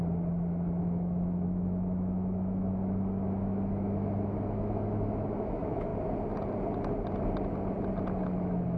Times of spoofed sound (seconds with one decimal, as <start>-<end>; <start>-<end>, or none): 0.8-5.9; 8.2-8.8